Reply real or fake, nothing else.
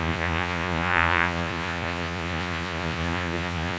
fake